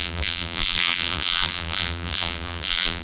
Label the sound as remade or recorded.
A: remade